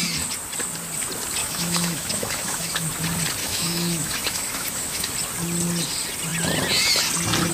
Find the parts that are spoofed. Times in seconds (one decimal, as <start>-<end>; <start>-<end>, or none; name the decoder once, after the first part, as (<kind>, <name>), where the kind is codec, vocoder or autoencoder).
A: 1.4-2.9 (autoencoder, DAC-VAE); 3.4-5.1